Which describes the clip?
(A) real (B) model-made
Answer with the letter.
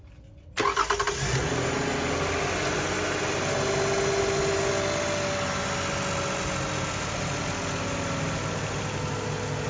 A